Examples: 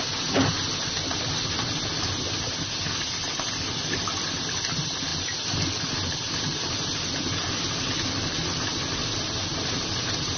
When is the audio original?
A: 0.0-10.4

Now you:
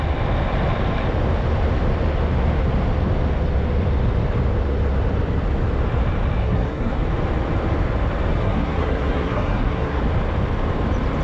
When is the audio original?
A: 0.0-6.4; 7.0-8.4; 10.0-11.2